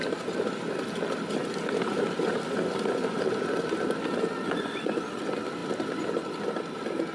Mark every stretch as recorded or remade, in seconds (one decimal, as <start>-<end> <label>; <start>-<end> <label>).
0.0-7.1 recorded